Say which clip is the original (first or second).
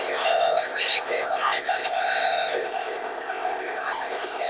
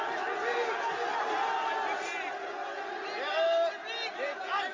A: second